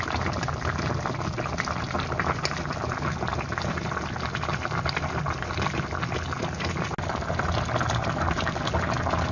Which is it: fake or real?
real